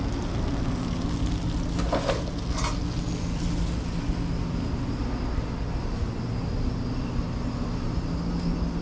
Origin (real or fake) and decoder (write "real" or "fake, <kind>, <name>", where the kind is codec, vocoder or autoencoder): real